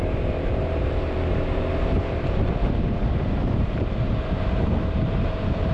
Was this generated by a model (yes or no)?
yes